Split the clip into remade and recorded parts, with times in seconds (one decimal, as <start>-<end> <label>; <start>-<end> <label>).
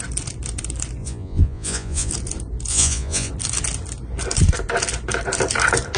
0.0-1.0 recorded; 1.0-2.1 remade; 2.1-2.7 recorded; 2.7-3.3 remade; 3.3-6.0 recorded